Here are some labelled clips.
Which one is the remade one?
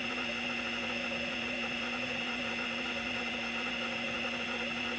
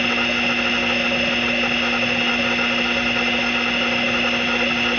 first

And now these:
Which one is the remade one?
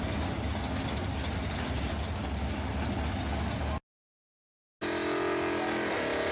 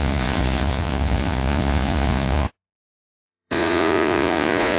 second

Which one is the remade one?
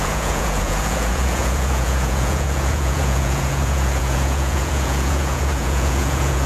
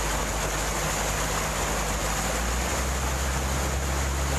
first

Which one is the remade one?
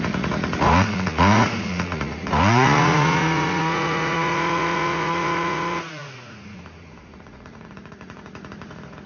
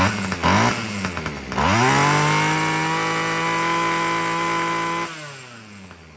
first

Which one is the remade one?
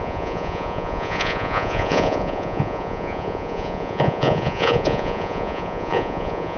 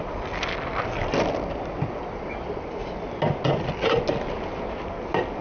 first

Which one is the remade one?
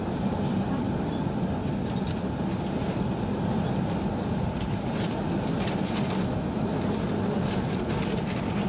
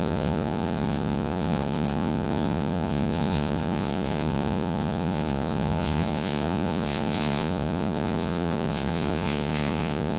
second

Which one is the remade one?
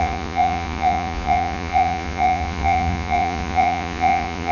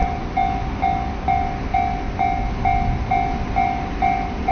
first